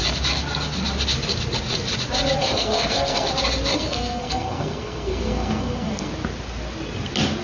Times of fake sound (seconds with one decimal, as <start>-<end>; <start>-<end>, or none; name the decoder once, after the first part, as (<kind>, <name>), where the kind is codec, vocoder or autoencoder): 2.4-3.3 (codec, SNAC); 3.7-6.1